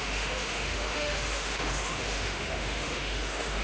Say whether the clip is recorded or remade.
remade